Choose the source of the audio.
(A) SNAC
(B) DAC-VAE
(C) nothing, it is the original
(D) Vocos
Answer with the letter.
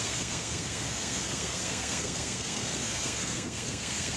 A